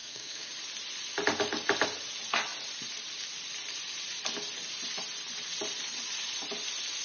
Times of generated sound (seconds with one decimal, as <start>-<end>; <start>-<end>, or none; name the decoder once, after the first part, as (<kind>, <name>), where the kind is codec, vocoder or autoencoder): 0.0-0.5 (codec, SNAC)